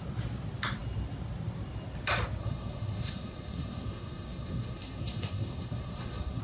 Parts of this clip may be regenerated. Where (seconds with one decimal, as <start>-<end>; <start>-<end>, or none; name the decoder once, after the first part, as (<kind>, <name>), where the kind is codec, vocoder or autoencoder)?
2.4-6.4 (codec, SNAC)